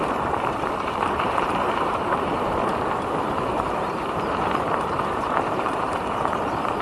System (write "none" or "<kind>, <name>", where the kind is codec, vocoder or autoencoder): vocoder, BigVGAN v2